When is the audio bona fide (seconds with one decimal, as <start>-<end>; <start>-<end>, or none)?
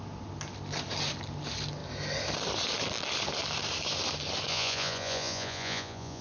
0.0-4.5